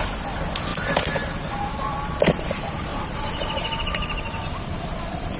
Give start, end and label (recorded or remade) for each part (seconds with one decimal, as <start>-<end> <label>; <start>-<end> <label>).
0.0-2.9 recorded; 2.9-5.0 remade; 5.0-5.4 recorded